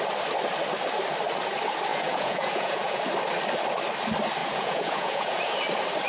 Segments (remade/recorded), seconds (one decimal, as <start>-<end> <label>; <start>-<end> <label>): 0.0-1.9 recorded; 1.9-3.0 remade; 3.0-4.4 recorded; 4.4-5.4 remade; 5.4-6.1 recorded